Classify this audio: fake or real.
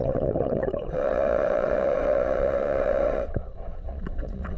fake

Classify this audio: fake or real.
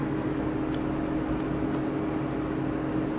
real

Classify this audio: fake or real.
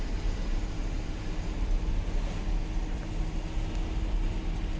real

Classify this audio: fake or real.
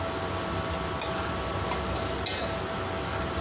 real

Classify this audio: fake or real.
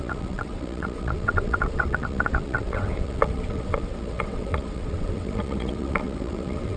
fake